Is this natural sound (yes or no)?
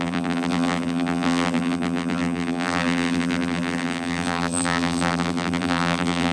no